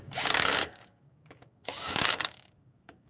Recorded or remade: remade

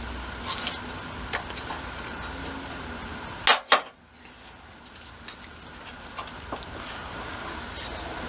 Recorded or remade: recorded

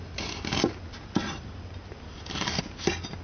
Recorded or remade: recorded